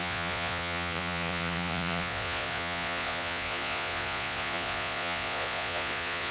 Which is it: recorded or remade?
remade